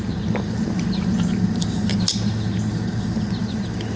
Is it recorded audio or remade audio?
recorded